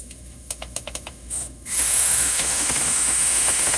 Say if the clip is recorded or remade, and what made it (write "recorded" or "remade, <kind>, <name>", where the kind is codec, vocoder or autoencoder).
remade, autoencoder, DAC-VAE